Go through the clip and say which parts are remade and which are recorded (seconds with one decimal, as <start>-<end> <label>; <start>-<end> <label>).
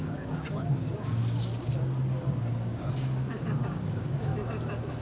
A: 0.0-1.2 remade; 1.2-2.5 recorded; 2.5-4.3 remade; 4.3-5.0 recorded